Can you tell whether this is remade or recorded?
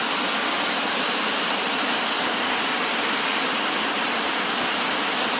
recorded